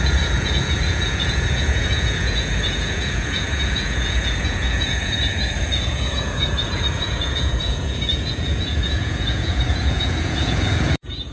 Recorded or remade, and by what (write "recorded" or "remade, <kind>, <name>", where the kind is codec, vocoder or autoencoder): remade, vocoder, Vocos